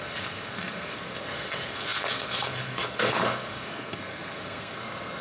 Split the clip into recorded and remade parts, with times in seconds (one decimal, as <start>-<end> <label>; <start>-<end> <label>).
0.0-5.2 remade